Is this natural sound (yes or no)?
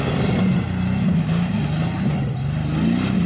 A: yes